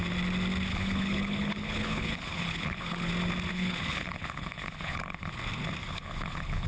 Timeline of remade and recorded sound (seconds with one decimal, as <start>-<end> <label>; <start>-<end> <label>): 0.0-0.7 recorded; 0.7-3.1 remade; 3.1-3.5 recorded; 3.5-5.3 remade; 5.3-5.8 recorded; 5.8-6.7 remade